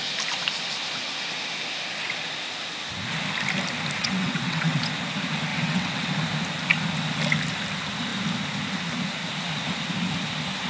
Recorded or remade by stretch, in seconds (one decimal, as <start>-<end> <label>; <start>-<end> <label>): 0.0-4.0 recorded; 4.0-4.8 remade; 4.8-5.5 recorded; 5.5-6.1 remade; 6.1-10.7 recorded